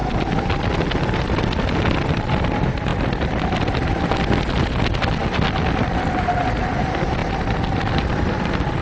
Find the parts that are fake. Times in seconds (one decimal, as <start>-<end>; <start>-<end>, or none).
0.0-7.2; 8.0-8.8